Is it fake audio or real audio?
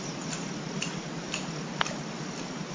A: real